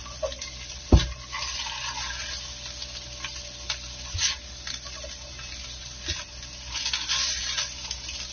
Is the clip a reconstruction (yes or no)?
no